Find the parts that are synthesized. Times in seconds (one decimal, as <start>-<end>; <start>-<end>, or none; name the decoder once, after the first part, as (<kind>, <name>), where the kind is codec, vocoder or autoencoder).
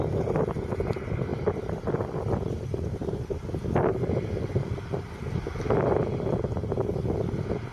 1.3-5.2 (vocoder, BigVGAN v2)